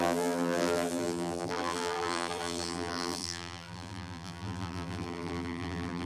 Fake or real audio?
fake